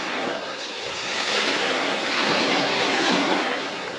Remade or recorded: remade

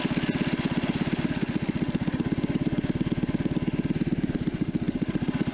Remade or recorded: recorded